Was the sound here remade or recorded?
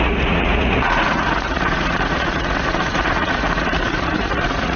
remade